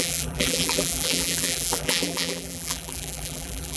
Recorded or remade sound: remade